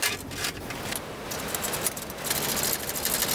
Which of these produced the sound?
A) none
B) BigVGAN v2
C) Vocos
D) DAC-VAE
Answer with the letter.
A